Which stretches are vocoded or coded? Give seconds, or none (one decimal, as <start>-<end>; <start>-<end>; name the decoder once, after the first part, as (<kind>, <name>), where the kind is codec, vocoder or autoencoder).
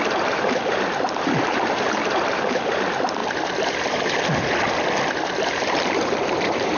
0.0-3.2 (vocoder, BigVGAN v2); 5.5-6.8